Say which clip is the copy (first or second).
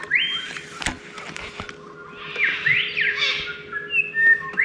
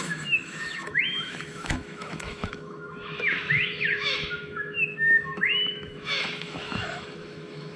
second